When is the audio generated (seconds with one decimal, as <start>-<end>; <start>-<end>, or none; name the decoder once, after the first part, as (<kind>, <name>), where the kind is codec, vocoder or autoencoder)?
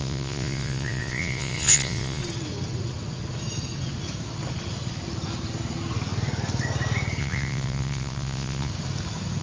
0.0-2.2 (vocoder, Vocos); 7.2-8.7